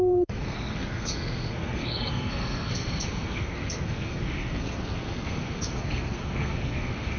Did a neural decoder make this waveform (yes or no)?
yes